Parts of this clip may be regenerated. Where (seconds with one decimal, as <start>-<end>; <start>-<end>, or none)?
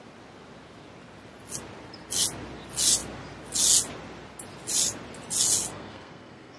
5.7-6.6